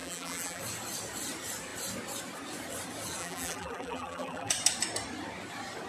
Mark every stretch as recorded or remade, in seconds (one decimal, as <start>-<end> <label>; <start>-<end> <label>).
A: 0.0-0.6 remade; 0.6-3.2 recorded; 3.2-4.5 remade; 4.5-5.9 recorded